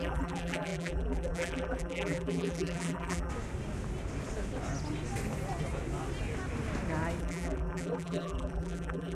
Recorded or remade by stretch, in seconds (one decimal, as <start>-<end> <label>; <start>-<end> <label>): 0.0-3.3 remade; 3.3-7.2 recorded; 7.2-9.1 remade